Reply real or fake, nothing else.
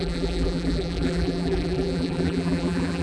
fake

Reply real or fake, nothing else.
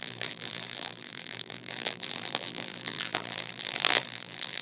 fake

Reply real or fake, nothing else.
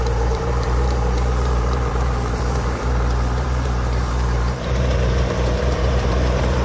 fake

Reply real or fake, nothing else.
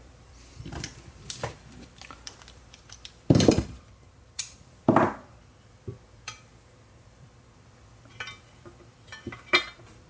fake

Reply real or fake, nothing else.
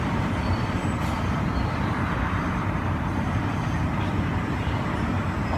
fake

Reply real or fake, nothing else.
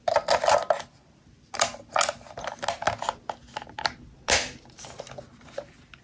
real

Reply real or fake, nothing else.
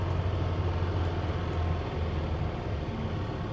real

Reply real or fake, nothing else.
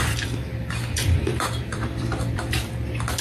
fake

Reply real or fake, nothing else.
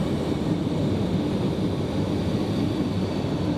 real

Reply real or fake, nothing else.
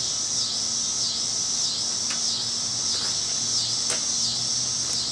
real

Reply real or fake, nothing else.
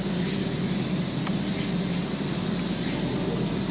real